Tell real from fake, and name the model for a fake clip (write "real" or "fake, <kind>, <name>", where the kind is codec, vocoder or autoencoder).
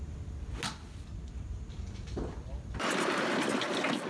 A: real